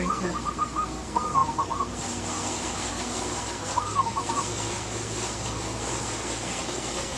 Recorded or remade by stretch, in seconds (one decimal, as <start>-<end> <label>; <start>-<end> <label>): 0.0-7.2 remade